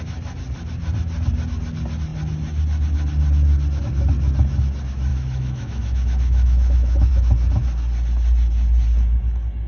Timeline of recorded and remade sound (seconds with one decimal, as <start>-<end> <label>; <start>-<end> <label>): 0.0-5.1 recorded; 5.1-7.1 remade; 7.1-9.7 recorded